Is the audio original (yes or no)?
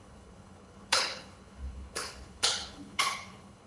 no